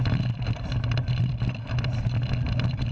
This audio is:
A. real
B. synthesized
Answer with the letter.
A